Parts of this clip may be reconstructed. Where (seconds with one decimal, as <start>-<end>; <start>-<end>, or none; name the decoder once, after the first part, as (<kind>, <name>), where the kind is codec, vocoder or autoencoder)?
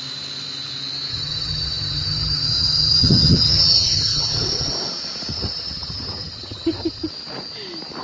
1.1-4.7 (vocoder, HiFi-GAN); 5.3-7.1